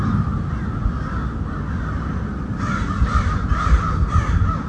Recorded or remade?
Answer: recorded